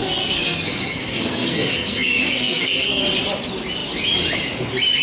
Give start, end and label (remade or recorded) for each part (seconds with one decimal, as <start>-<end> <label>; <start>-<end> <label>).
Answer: 0.0-3.0 remade; 3.0-5.0 recorded